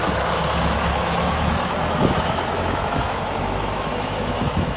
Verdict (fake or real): fake